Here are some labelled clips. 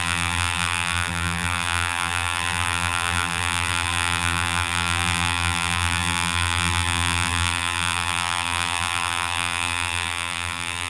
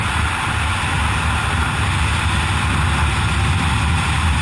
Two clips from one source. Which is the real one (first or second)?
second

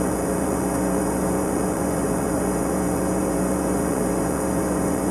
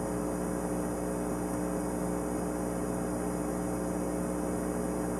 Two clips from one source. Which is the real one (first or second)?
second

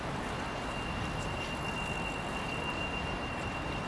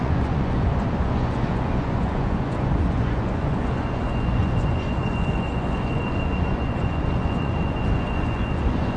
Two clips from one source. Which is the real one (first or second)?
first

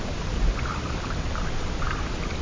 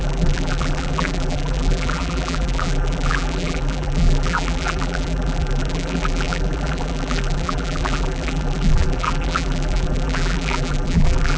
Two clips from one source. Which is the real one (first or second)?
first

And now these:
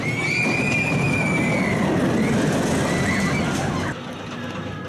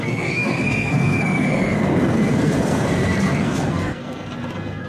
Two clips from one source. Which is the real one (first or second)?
first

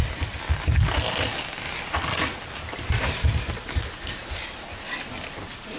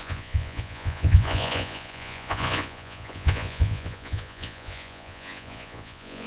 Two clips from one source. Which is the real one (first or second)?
first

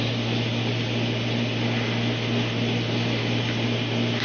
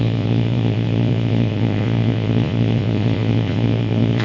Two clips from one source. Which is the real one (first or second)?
first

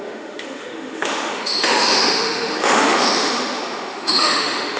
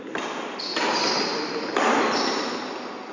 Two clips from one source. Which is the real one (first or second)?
second